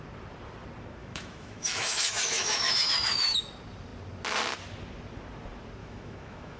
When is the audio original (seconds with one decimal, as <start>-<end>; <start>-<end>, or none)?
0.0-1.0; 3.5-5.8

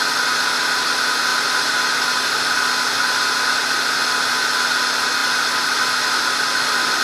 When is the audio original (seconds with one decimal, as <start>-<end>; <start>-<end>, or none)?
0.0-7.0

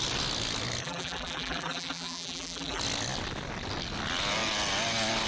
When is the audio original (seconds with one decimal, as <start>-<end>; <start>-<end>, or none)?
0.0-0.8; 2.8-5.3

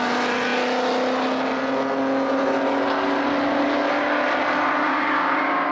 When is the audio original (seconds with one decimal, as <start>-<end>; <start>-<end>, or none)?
0.0-4.8

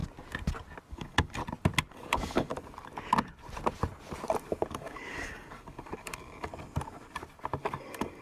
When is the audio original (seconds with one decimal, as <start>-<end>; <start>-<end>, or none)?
0.0-0.9; 1.4-1.9; 2.5-4.7; 6.5-7.6